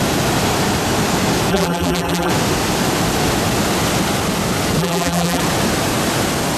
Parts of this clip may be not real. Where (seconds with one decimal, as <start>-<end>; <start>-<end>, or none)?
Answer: 1.5-2.3; 4.8-5.4